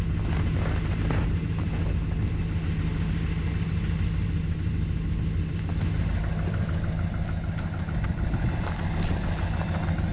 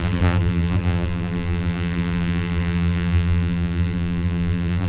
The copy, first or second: second